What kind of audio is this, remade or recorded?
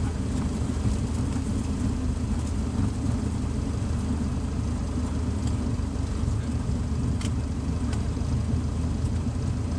recorded